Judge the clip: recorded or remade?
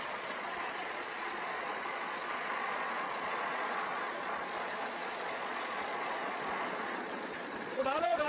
remade